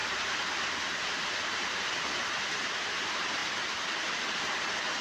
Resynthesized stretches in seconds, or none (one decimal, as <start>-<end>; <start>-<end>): 0.0-3.4; 4.4-5.0